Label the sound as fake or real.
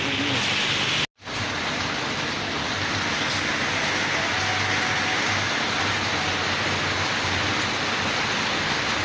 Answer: real